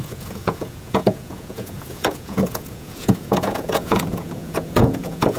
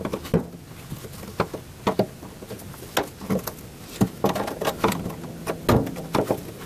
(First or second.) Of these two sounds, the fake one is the first